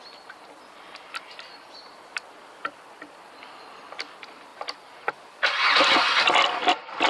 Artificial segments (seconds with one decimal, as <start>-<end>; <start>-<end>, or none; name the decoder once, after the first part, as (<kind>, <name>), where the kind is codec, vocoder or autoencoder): none